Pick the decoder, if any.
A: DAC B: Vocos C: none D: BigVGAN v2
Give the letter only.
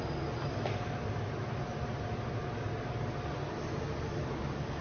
C